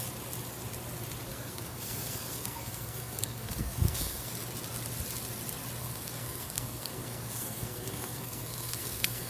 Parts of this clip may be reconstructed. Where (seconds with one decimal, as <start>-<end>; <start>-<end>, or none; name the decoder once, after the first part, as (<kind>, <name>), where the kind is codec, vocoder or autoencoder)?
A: 1.3-4.3 (codec, SNAC); 5.8-9.3